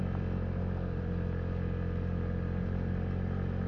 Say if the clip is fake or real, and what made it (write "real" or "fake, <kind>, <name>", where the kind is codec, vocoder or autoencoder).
real